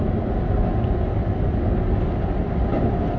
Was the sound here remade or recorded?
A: recorded